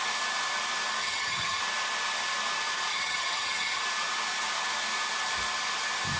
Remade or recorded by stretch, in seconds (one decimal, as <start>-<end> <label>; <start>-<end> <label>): 0.0-1.0 recorded; 1.0-1.6 remade; 1.6-2.9 recorded; 2.9-3.8 remade; 3.8-6.2 recorded